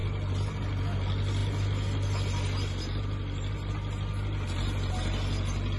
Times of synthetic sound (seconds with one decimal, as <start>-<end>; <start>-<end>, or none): none

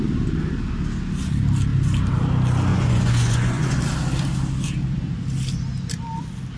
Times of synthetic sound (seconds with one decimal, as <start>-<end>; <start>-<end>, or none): 2.7-3.8

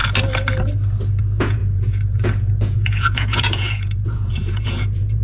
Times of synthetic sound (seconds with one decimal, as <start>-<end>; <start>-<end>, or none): 1.2-5.2

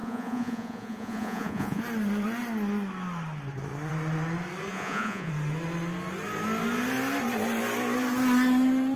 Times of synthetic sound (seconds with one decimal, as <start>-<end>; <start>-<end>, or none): 0.0-1.8; 4.7-5.3

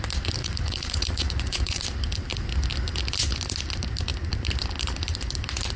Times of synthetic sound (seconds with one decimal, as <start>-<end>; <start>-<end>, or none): 0.4-1.8

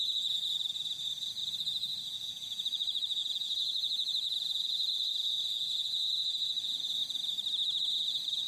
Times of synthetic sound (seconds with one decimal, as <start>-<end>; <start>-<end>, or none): 0.0-7.0; 7.9-8.5